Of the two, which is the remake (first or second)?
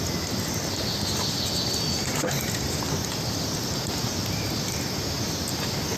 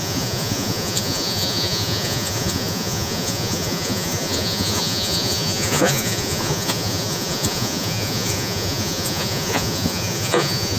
second